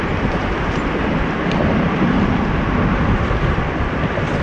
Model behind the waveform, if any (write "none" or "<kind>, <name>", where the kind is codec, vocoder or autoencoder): vocoder, BigVGAN v2